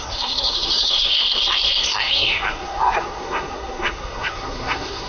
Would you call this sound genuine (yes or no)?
no